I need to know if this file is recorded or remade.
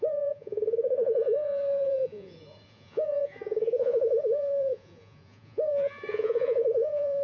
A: remade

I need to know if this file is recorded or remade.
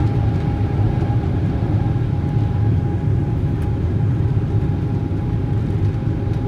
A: recorded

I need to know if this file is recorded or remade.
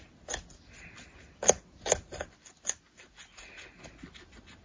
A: recorded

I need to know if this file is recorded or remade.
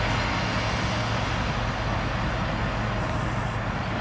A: recorded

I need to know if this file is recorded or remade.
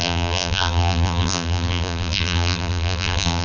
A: remade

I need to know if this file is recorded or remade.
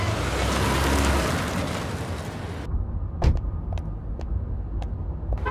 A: recorded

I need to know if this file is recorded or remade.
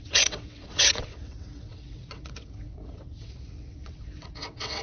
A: remade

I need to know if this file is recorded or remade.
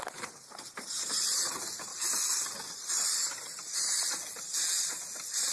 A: recorded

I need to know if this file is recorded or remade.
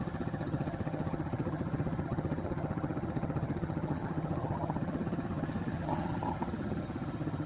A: remade